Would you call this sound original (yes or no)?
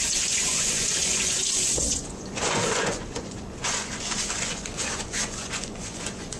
no